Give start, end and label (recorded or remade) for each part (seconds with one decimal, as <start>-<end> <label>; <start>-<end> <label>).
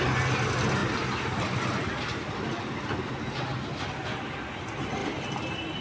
0.0-5.8 recorded